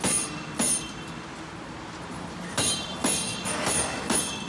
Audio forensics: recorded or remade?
recorded